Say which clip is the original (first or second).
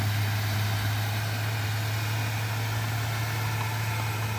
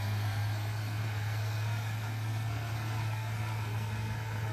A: first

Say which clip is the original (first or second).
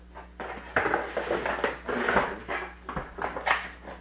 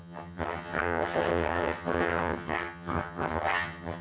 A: first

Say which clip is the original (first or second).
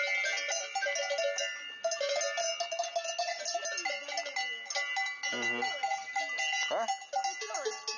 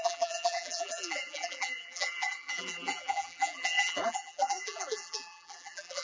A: first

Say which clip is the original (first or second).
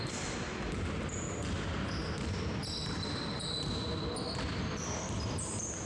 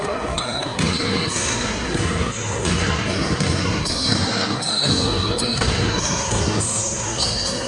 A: first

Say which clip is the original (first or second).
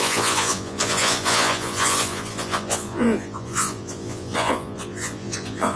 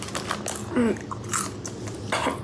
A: second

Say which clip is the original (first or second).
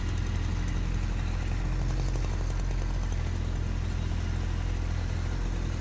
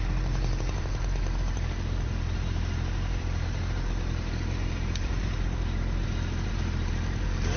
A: first